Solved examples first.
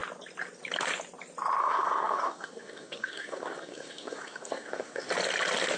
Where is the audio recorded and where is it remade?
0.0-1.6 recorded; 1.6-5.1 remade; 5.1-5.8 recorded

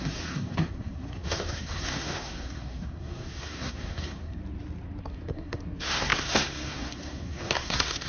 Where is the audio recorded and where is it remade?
0.0-4.4 remade; 4.4-5.0 recorded; 5.0-8.1 remade